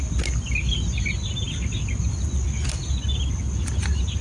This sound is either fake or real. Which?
real